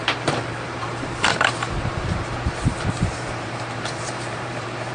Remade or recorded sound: remade